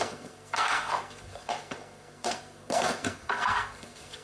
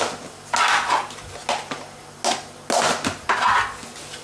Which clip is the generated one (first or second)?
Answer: first